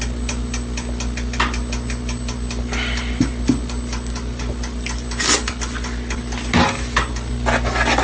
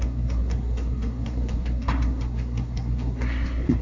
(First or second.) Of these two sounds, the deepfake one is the second